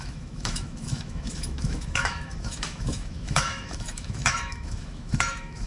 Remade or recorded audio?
remade